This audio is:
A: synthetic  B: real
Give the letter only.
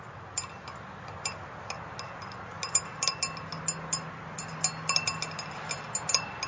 B